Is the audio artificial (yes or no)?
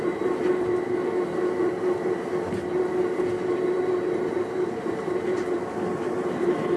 yes